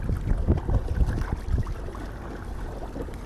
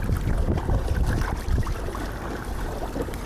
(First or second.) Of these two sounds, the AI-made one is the second